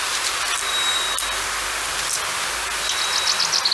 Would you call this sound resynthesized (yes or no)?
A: no